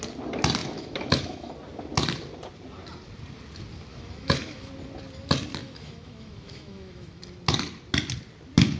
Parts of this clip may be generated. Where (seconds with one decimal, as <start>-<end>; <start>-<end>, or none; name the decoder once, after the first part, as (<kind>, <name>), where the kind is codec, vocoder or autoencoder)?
0.6-1.5 (autoencoder, DAC-VAE); 3.9-4.7; 5.6-7.2